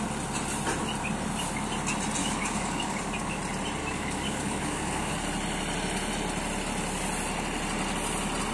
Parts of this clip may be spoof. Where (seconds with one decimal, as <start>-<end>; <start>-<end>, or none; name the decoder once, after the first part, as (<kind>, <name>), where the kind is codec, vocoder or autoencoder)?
2.2-3.4 (codec, DAC); 3.8-5.1